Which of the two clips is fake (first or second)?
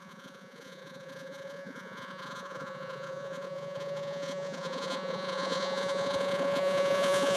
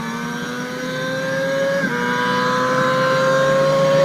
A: first